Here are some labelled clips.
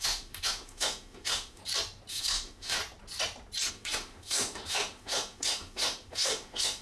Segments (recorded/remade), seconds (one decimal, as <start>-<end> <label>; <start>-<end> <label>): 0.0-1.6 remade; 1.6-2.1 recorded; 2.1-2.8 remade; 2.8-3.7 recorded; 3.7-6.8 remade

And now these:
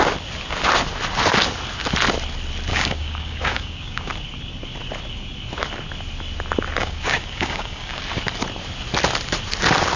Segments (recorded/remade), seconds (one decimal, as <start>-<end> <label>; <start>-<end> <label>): 0.0-2.7 recorded; 2.7-4.1 remade; 4.1-6.8 recorded; 6.8-8.0 remade; 8.0-10.0 recorded

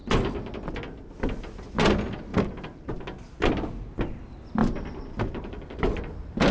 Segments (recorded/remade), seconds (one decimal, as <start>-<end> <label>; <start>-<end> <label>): 0.0-2.3 recorded; 2.3-2.9 remade; 2.9-4.6 recorded; 4.6-6.1 remade; 6.1-6.5 recorded

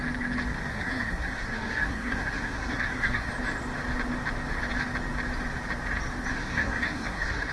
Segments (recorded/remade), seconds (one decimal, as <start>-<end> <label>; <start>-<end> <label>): 0.0-0.7 recorded; 0.7-3.3 remade; 3.3-6.3 recorded; 6.3-7.5 remade

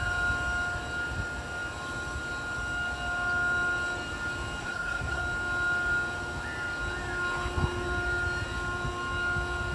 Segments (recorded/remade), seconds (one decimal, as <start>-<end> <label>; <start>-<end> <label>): 0.0-4.6 recorded; 4.6-5.2 remade; 5.2-9.7 recorded

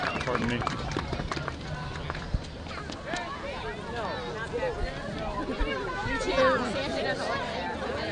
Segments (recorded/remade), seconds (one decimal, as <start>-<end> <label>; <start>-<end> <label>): 0.0-1.9 remade; 1.9-6.7 recorded; 6.7-8.1 remade